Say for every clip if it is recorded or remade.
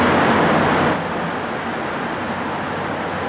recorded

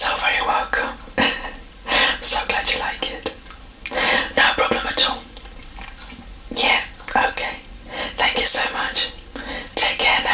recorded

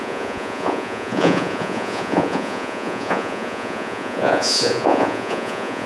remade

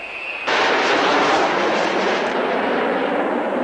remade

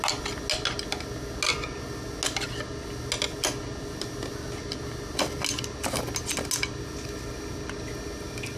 recorded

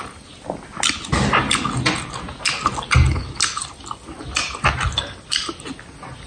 recorded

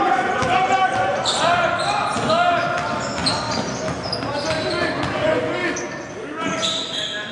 recorded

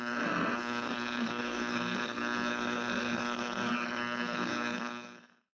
remade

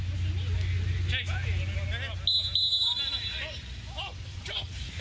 recorded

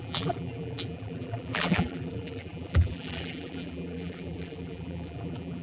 remade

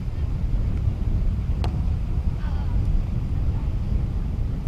recorded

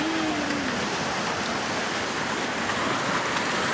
recorded